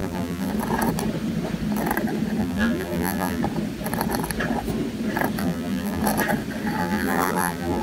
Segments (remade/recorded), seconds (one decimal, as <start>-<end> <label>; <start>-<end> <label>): 0.0-0.5 remade; 0.5-2.4 recorded; 2.4-3.4 remade; 3.4-5.4 recorded; 5.4-6.0 remade; 6.0-6.8 recorded; 6.8-7.8 remade